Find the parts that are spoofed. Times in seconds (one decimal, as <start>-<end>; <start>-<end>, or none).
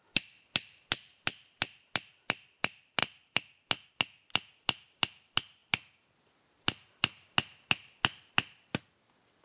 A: none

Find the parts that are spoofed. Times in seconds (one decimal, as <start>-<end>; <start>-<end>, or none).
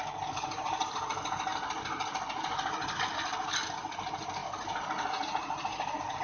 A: none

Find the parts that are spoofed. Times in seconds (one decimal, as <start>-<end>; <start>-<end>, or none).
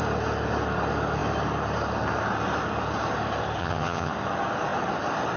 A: 3.6-4.1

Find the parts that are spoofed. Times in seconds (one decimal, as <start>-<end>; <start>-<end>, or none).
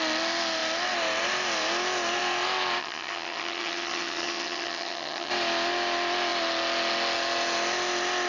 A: 2.8-5.3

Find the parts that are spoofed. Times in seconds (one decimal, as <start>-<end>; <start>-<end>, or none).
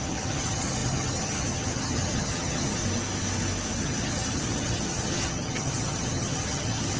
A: 0.0-2.8; 3.8-7.0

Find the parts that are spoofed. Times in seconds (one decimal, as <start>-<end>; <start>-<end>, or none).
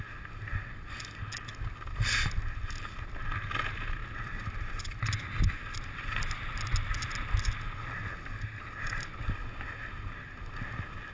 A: none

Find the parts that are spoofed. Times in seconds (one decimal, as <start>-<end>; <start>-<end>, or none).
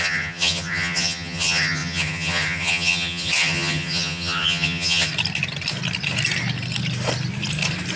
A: 0.0-5.1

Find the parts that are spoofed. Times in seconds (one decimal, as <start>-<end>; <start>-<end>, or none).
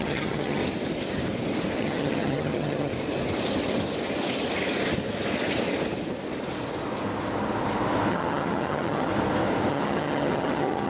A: 0.0-0.6; 1.8-2.9; 8.1-9.1; 9.7-10.9